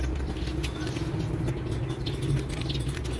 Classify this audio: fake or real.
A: real